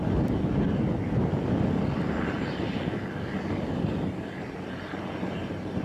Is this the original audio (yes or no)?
yes